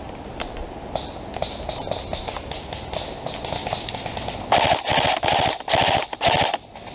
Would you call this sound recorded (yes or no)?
yes